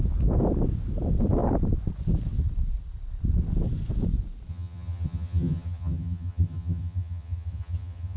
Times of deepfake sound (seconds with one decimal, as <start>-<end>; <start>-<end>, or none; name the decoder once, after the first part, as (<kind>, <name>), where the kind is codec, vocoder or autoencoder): 4.5-8.2 (vocoder, HiFi-GAN)